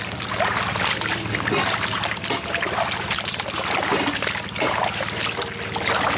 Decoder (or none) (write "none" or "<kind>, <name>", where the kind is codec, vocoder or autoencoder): none